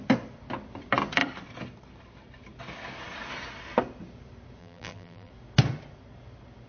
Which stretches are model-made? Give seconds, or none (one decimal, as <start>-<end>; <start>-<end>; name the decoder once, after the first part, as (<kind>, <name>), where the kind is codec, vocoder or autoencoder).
4.6-5.3 (vocoder, BigVGAN v2)